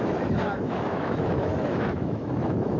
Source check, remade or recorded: remade